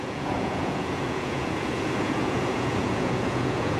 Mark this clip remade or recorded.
remade